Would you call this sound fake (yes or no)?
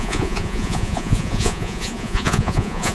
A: yes